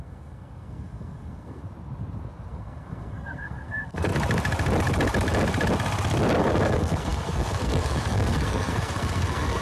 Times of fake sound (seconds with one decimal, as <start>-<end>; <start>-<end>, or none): 0.0-1.6; 2.5-4.1; 6.4-9.6